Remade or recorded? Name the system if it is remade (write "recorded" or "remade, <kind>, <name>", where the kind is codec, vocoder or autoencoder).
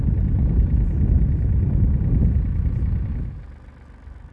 recorded